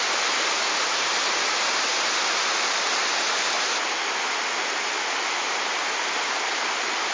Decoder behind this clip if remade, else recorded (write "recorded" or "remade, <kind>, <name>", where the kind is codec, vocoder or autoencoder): recorded